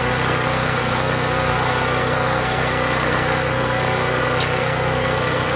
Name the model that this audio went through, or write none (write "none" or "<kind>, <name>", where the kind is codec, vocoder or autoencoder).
codec, SNAC